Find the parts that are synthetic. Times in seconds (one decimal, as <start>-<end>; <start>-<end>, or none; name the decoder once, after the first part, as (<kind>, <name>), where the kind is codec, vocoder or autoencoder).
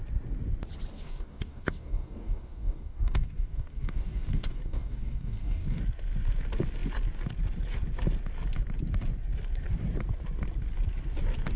0.9-5.8 (codec, DAC)